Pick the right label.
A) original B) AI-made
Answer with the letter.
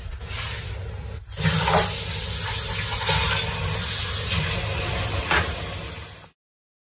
A